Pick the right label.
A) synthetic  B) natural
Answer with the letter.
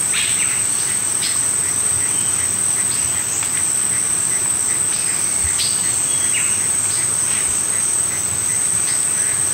B